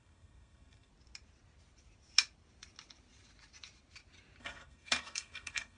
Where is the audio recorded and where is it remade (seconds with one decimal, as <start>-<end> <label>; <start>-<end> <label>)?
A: 0.0-0.9 remade; 0.9-4.4 recorded; 4.4-5.8 remade